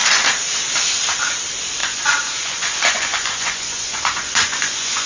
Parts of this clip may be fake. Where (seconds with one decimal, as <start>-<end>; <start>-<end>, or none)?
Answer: 1.8-5.1